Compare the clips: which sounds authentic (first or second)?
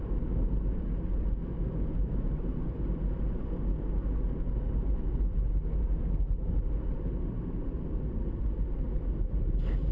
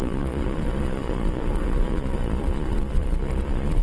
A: first